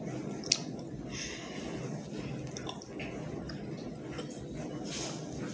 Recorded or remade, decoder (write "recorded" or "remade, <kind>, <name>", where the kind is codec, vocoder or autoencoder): recorded